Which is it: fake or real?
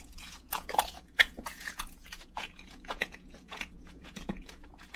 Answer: fake